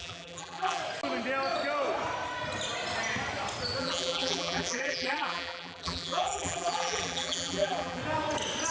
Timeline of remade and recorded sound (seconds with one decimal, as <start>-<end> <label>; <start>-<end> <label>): 0.0-0.8 remade; 0.8-3.8 recorded; 3.8-8.0 remade; 8.0-8.7 recorded